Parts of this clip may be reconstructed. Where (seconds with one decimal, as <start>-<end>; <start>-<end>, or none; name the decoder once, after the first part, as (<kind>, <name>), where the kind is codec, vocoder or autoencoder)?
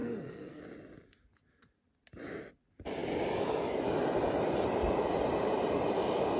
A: 0.0-0.6 (codec, SNAC)